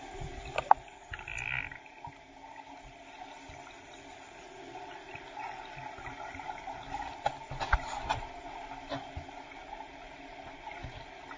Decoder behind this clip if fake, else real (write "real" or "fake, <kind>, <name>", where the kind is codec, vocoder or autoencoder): real